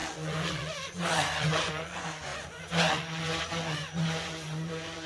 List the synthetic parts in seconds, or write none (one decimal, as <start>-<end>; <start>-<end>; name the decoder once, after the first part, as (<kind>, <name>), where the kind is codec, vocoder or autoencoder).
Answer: 0.0-5.1 (vocoder, Vocos)